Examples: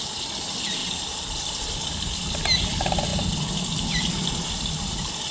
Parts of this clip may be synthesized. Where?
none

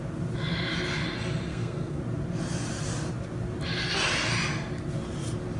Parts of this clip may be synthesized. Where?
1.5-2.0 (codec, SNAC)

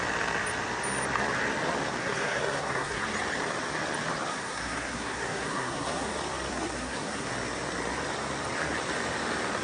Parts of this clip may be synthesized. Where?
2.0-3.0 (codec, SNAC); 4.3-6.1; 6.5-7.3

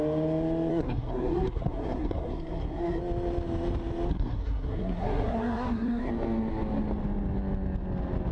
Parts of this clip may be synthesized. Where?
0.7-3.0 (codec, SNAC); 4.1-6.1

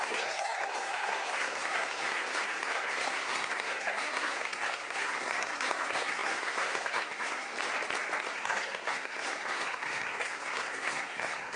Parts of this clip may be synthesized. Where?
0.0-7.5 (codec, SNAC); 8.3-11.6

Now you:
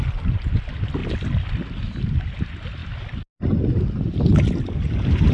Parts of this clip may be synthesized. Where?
none

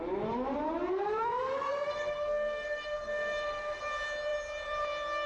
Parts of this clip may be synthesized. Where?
0.9-3.8 (codec, SNAC)

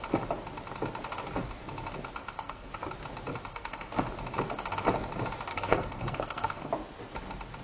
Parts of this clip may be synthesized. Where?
2.2-2.7 (codec, SNAC); 3.5-4.0; 5.5-6.7